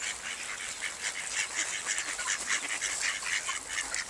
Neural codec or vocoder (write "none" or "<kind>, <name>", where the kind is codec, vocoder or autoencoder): none